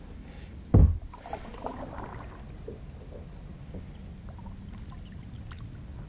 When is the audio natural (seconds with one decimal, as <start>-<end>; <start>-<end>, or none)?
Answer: 0.0-6.1